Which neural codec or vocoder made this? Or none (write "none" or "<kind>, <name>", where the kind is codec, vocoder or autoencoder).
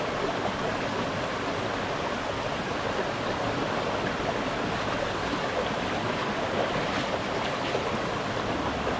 none